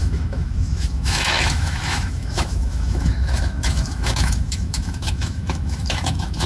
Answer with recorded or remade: remade